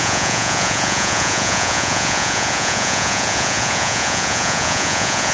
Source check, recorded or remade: remade